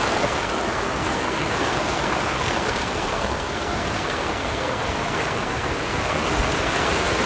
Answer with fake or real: fake